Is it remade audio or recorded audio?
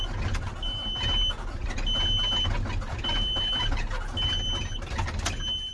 recorded